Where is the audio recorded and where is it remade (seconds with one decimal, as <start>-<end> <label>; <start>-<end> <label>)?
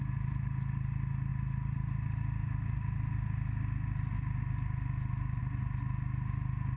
0.0-6.8 recorded